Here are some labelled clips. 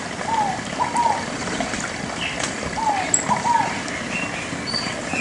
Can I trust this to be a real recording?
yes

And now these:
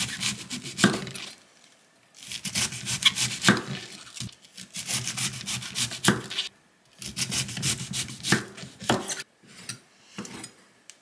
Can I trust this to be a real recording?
yes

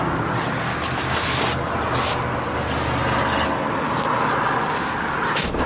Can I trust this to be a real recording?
yes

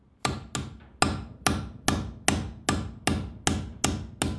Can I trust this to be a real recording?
yes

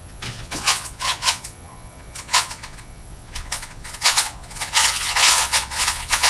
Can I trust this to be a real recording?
no